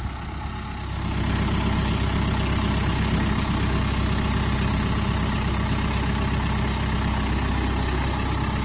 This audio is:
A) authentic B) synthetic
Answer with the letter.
A